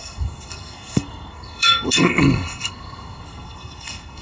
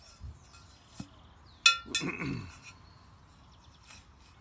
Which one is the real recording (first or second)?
second